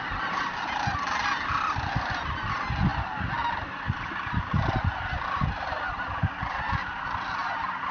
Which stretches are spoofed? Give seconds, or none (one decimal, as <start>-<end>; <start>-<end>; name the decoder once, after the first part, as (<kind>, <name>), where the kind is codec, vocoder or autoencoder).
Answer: none